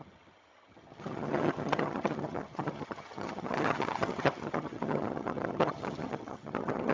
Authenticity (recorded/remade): remade